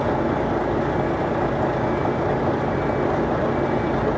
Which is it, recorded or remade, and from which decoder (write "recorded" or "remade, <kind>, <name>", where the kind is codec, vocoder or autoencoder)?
recorded